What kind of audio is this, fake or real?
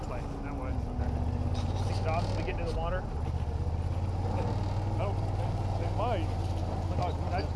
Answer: real